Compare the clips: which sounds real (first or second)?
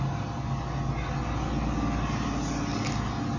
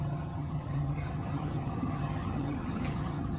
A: first